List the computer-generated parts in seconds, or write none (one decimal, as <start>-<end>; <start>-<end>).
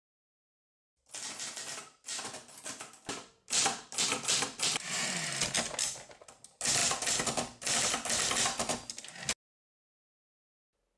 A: none